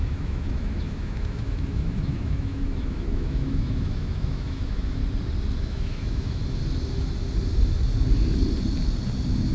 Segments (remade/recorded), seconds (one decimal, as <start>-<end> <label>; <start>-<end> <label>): 0.0-5.0 remade; 5.0-5.6 recorded; 5.6-6.4 remade; 6.4-9.5 recorded

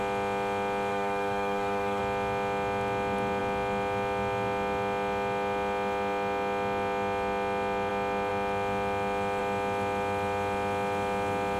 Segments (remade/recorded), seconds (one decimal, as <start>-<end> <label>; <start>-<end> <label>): 0.0-0.9 recorded; 0.9-2.0 remade; 2.0-11.6 recorded

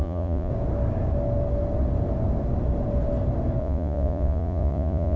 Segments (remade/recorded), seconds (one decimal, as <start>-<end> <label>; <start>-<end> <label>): 0.0-0.5 remade; 0.5-3.6 recorded; 3.6-5.2 remade

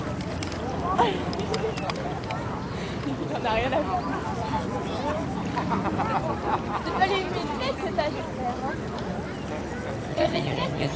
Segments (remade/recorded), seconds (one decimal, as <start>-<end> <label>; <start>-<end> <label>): 0.0-10.1 recorded; 10.1-11.0 remade

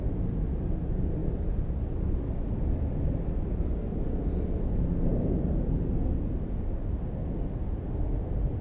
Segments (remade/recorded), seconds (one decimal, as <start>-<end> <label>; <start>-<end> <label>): 0.0-8.6 recorded